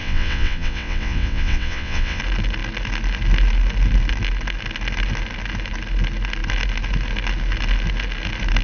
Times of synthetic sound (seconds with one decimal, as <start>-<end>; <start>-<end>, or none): 0.0-2.2